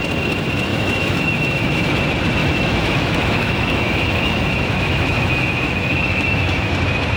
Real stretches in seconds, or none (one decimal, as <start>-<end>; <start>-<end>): 0.0-0.7; 1.9-2.4; 6.7-7.2